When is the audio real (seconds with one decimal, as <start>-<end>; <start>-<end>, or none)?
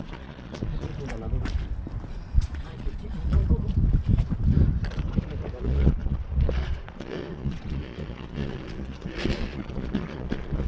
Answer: 0.9-2.1; 3.4-5.6